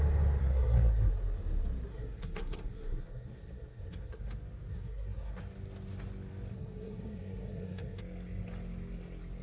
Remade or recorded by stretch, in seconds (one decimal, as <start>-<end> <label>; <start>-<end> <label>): 0.0-0.4 recorded; 0.4-1.1 remade; 1.1-1.9 recorded; 1.9-4.2 remade; 4.2-4.7 recorded; 4.7-5.4 remade; 5.4-6.5 recorded; 6.5-8.0 remade; 8.0-9.4 recorded